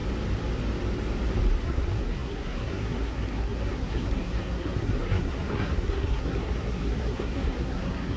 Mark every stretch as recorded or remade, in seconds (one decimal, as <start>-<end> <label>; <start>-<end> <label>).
0.0-1.6 recorded; 1.6-8.2 remade

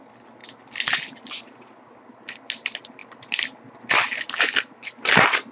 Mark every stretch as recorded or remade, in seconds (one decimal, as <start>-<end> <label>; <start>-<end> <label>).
0.0-5.5 recorded

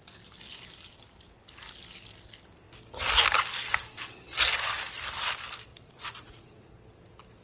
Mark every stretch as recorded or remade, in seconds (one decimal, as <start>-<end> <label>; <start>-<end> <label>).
0.0-5.7 recorded; 5.7-6.7 remade; 6.7-7.4 recorded